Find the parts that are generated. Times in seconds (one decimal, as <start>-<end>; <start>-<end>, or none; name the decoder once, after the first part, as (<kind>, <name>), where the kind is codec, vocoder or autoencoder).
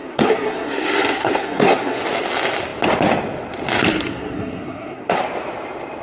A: 0.0-2.0 (codec, SNAC); 3.9-5.2